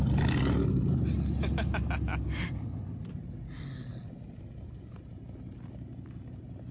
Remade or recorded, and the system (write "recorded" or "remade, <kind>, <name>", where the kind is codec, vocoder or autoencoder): recorded